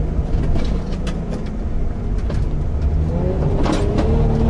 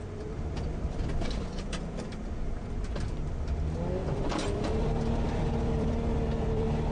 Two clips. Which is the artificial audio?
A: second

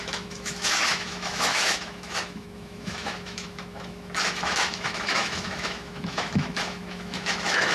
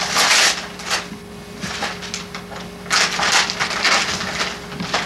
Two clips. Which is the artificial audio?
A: first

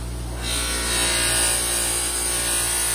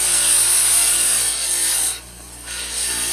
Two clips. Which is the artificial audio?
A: second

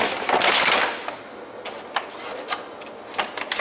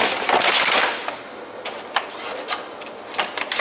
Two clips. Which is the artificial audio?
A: second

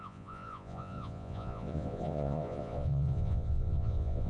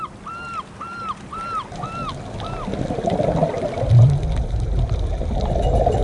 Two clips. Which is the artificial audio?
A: first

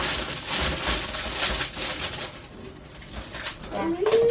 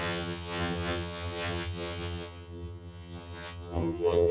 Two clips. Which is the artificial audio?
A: second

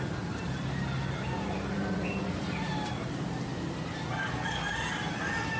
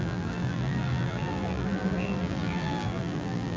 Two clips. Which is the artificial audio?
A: second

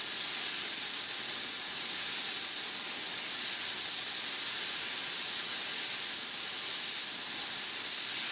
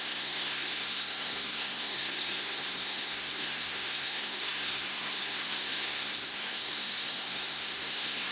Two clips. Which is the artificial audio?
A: second